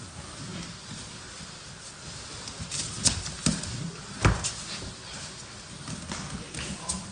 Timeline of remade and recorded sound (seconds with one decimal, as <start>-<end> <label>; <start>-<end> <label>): 0.0-7.1 recorded